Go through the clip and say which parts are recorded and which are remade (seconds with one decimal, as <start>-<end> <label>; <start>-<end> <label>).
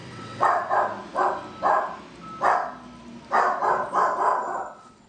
0.0-0.7 remade; 0.7-4.3 recorded; 4.3-5.1 remade